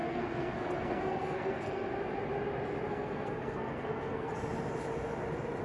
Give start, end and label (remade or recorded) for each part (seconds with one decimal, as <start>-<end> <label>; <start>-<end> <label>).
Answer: 0.0-1.9 remade; 1.9-2.9 recorded; 2.9-4.3 remade; 4.3-5.6 recorded